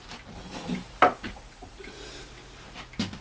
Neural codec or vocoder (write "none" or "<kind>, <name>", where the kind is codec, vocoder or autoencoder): none